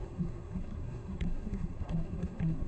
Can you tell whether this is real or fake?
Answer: fake